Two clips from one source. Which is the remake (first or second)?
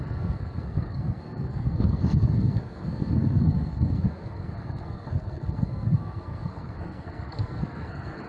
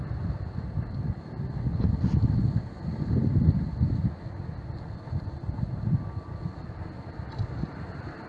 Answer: first